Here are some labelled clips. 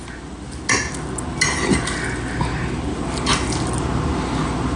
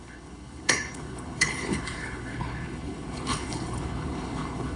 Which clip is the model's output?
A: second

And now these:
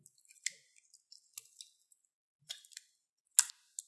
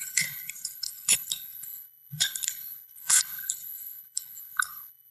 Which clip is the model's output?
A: second